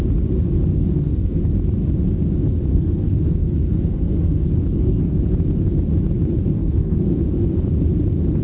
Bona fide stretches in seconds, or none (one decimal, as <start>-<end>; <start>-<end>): 0.0-0.7; 1.4-2.7; 5.2-6.5; 7.2-8.4